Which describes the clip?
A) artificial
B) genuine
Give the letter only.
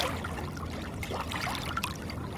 B